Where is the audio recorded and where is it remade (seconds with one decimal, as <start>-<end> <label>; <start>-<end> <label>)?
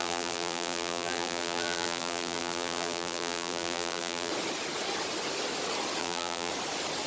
0.0-4.3 remade; 4.3-6.0 recorded; 6.0-6.5 remade; 6.5-7.1 recorded